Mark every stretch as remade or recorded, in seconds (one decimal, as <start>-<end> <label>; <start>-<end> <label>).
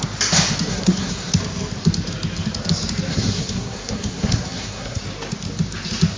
0.0-0.7 recorded; 0.7-1.3 remade; 1.3-3.1 recorded; 3.1-5.0 remade; 5.0-6.2 recorded